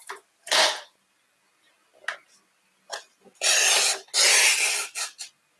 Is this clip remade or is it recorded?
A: recorded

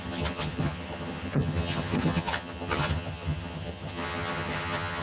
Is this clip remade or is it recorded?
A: remade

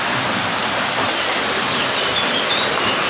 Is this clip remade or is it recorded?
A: recorded